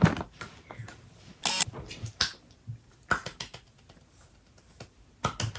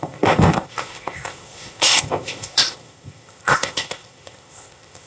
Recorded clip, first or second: first